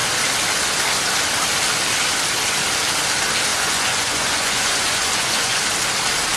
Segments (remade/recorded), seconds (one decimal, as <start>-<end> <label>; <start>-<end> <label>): 0.0-3.5 recorded; 3.5-5.6 remade; 5.6-6.4 recorded